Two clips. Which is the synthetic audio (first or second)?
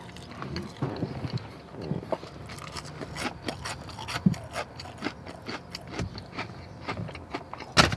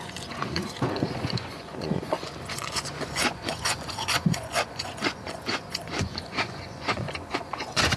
second